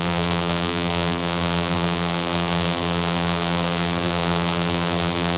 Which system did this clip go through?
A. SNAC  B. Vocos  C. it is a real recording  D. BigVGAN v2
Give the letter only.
D